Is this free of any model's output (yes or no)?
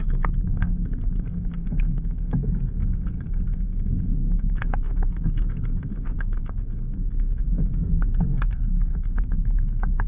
no